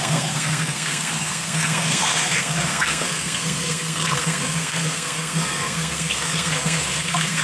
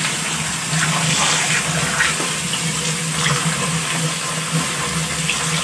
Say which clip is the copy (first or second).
first